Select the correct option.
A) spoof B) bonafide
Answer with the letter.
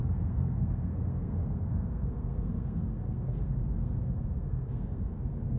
A